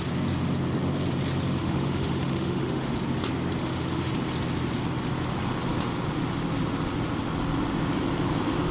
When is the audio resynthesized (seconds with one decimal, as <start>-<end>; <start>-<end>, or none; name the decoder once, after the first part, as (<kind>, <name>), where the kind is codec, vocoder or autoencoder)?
1.6-2.9 (autoencoder, DAC-VAE); 3.6-4.1